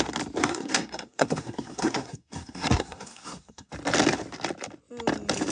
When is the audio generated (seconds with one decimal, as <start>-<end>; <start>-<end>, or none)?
0.4-3.7